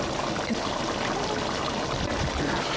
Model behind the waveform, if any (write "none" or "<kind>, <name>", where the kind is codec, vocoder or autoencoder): none